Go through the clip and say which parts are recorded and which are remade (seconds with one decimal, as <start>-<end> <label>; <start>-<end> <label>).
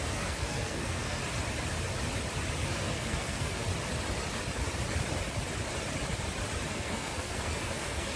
0.0-1.2 remade; 1.2-2.6 recorded; 2.6-3.7 remade; 3.7-6.7 recorded; 6.7-8.2 remade